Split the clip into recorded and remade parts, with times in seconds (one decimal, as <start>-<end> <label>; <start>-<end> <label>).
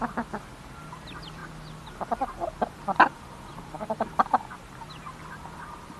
0.0-6.0 recorded